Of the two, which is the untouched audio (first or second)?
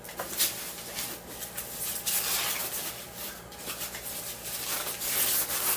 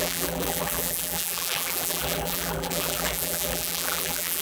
first